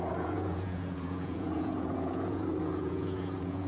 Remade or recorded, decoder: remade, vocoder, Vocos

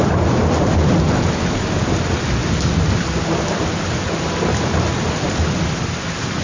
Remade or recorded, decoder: recorded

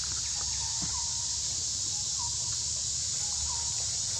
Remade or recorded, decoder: recorded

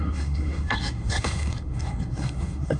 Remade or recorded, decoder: remade, codec, SNAC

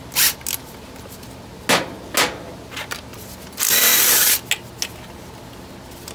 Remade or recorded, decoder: recorded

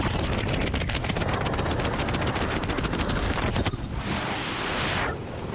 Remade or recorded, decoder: recorded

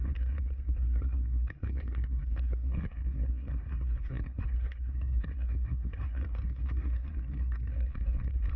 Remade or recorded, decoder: remade, codec, SNAC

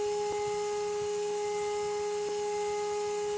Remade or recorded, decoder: recorded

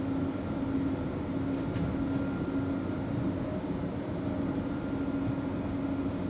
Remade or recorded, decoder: recorded